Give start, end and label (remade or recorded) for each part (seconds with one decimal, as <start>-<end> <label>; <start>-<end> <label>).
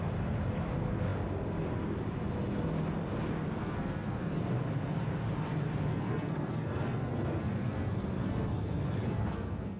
0.0-3.6 recorded; 3.6-4.4 remade; 4.4-5.9 recorded; 5.9-9.8 remade